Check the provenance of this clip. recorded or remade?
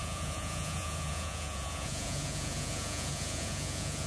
remade